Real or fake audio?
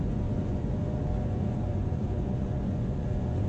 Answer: fake